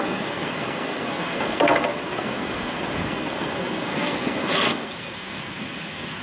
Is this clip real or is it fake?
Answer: fake